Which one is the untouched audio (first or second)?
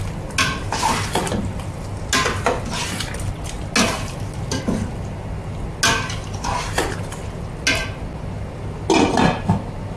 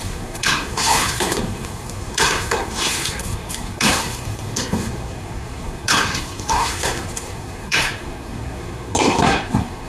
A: first